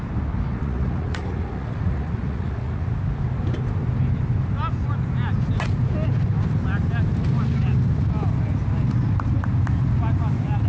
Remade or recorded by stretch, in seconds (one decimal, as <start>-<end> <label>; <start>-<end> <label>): 0.0-0.5 recorded; 0.5-2.9 remade; 2.9-10.7 recorded